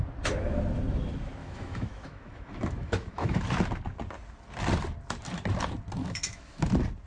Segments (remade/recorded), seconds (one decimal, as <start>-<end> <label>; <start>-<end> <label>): 0.0-1.4 recorded; 1.4-3.4 remade; 3.4-6.0 recorded; 6.0-6.6 remade; 6.6-7.1 recorded